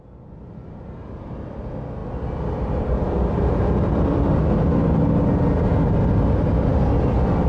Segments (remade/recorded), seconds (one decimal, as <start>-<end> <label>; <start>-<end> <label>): 0.0-7.5 recorded